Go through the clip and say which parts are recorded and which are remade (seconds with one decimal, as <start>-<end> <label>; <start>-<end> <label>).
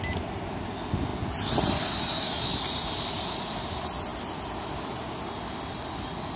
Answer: 0.0-6.4 recorded